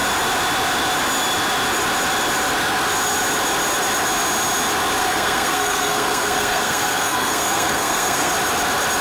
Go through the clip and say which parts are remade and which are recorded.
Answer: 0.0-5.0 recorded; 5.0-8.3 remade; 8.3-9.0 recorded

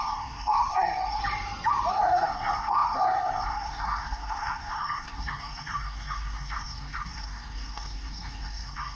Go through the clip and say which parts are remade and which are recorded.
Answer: 0.0-1.2 remade; 1.2-1.9 recorded; 1.9-8.9 remade

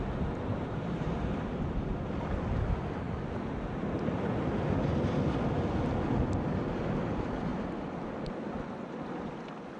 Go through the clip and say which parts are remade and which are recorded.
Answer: 0.0-0.5 recorded; 0.5-1.1 remade; 1.1-9.8 recorded

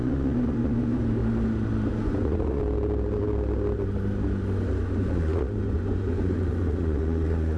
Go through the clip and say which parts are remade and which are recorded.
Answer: 0.0-1.2 remade; 1.2-1.9 recorded; 1.9-2.6 remade; 2.6-5.0 recorded; 5.0-7.6 remade

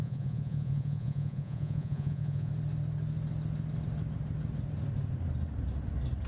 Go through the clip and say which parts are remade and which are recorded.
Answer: 0.0-2.5 remade; 2.5-6.3 recorded